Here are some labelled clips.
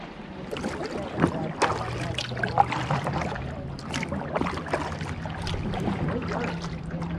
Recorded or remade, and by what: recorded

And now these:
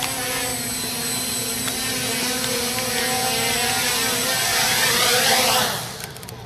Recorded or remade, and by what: recorded